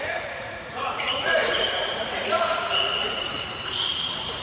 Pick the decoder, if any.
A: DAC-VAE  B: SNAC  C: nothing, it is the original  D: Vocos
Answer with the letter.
D